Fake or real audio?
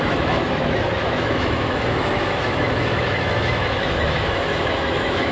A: fake